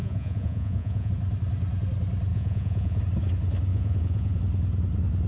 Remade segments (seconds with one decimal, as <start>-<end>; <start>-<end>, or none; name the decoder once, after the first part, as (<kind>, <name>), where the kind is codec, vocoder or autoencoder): 0.0-1.1 (vocoder, Vocos); 2.3-3.0; 3.7-4.4